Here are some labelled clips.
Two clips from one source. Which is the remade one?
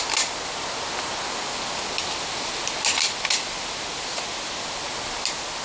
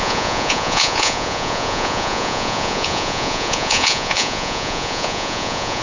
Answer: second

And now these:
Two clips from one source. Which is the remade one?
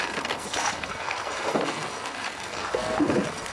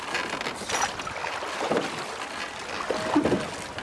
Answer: first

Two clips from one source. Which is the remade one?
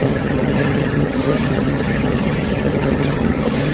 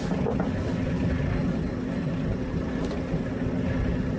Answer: first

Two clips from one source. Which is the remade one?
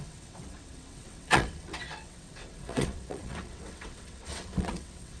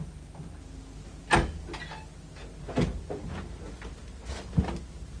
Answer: first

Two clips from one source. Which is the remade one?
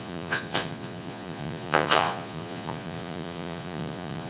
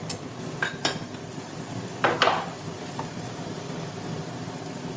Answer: first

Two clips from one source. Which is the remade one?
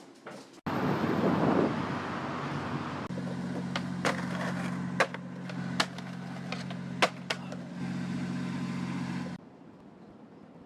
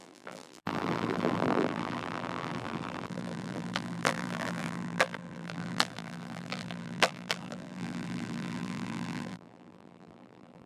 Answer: second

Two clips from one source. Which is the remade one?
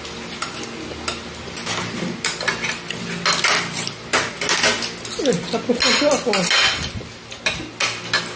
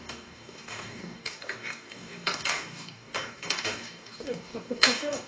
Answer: second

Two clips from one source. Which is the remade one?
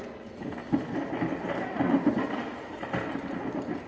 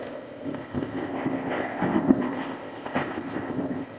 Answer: second